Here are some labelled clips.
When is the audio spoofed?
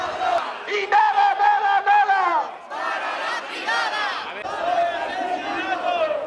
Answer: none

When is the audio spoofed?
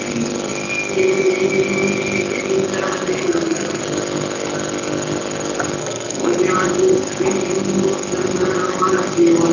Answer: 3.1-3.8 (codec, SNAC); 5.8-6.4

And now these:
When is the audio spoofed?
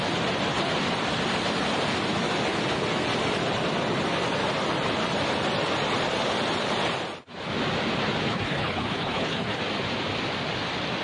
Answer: 8.3-9.6 (codec, HILCodec)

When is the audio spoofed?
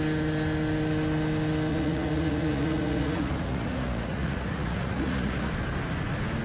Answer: 1.7-5.5 (vocoder, Vocos)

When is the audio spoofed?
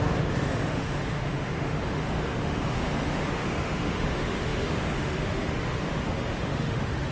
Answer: 0.0-7.1 (autoencoder, DAC-VAE)